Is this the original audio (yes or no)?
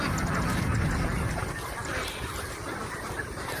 yes